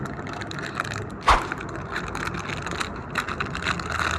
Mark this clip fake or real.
real